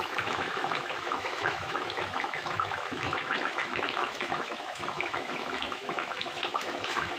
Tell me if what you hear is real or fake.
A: fake